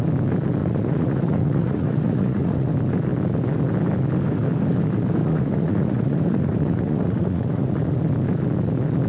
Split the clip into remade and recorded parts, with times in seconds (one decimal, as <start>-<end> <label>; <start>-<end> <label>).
0.0-0.6 recorded; 0.6-2.7 remade; 2.7-5.2 recorded; 5.2-7.7 remade; 7.7-9.1 recorded